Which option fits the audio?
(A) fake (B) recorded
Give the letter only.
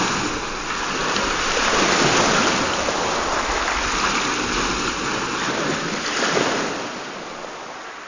B